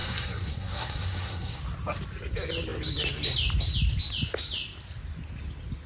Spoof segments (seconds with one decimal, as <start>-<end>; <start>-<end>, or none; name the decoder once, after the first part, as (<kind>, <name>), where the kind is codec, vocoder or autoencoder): 0.0-1.6 (codec, SNAC)